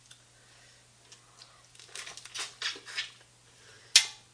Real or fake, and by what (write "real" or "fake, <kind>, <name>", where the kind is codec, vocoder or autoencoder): real